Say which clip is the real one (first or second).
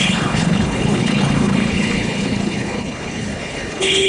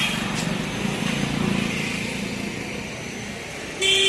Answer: second